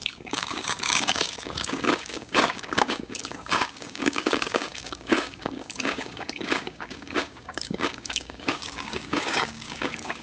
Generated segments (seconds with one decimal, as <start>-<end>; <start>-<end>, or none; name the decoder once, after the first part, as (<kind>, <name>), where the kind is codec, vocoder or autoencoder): 0.0-10.2 (codec, DAC)